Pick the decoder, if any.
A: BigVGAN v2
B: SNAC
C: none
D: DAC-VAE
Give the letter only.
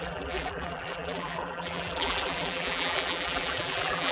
A